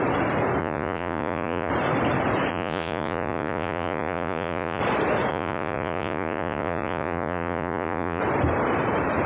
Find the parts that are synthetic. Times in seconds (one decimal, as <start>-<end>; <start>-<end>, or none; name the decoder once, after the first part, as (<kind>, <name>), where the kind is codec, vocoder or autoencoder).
0.6-1.7 (vocoder, Vocos); 2.5-4.8; 5.3-8.2